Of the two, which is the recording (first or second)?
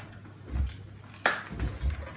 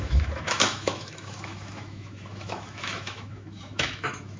first